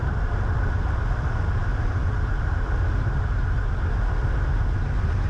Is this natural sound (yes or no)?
yes